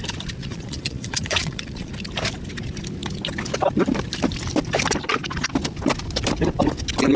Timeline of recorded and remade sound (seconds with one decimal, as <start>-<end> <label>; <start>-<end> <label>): 0.0-0.4 recorded; 0.4-1.9 remade; 1.9-7.2 recorded